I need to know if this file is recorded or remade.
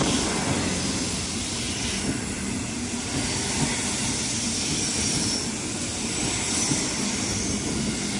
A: recorded